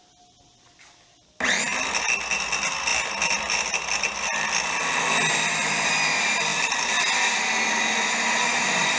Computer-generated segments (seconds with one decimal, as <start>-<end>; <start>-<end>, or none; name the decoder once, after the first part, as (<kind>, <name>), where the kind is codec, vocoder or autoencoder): none